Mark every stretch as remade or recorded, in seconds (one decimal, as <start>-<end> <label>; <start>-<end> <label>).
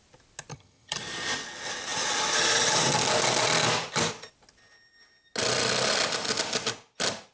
0.0-0.5 recorded; 0.5-1.0 remade; 1.0-7.3 recorded